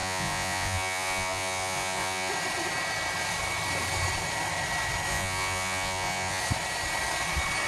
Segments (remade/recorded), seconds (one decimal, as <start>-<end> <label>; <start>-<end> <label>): 0.0-2.3 remade; 2.3-5.1 recorded; 5.1-6.4 remade; 6.4-7.7 recorded